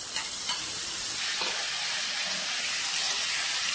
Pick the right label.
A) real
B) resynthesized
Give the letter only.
A